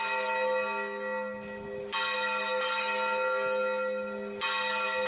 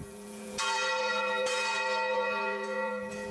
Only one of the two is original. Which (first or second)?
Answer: first